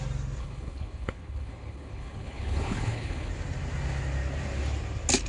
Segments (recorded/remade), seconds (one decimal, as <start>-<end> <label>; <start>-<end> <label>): 0.0-0.4 recorded; 0.4-3.3 remade; 3.3-5.3 recorded